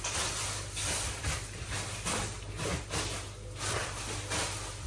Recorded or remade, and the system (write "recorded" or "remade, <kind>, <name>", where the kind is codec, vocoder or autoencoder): recorded